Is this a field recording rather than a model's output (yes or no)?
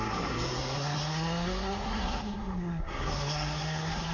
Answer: no